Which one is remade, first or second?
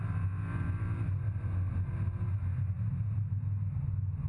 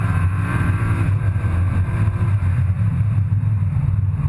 second